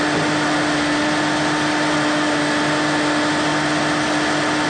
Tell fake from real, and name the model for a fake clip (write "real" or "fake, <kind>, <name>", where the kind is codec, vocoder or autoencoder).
real